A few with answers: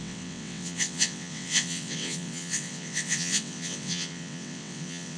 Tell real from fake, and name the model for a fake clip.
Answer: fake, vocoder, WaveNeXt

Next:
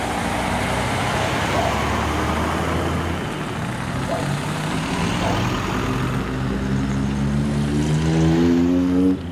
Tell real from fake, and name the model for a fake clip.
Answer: real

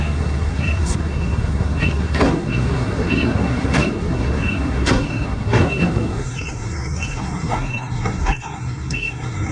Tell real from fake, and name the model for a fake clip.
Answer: fake, codec, SNAC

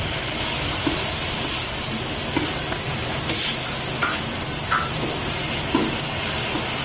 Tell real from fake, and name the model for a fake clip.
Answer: real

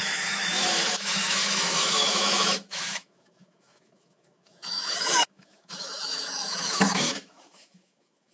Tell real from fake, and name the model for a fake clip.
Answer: fake, autoencoder, DAC-VAE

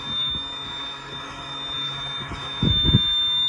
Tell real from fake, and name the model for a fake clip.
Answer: fake, autoencoder, DAC-VAE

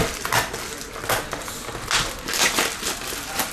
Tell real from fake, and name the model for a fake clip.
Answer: real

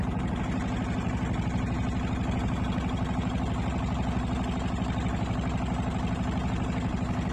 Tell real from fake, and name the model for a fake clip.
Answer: real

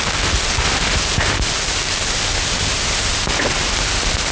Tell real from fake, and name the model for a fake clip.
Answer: real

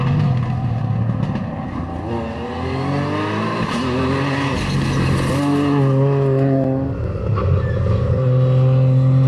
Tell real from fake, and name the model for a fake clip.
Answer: real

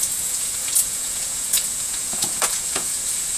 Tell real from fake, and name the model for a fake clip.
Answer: fake, vocoder, Vocos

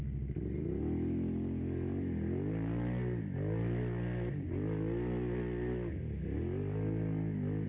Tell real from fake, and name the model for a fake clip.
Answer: real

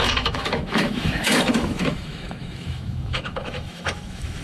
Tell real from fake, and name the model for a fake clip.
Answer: fake, autoencoder, DAC-VAE